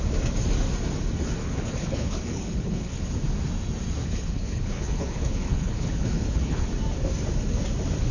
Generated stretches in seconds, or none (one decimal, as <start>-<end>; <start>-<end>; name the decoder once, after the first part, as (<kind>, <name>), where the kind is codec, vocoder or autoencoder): 1.4-3.1 (codec, HILCodec); 4.0-6.6